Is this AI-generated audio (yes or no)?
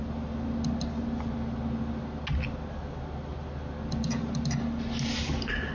no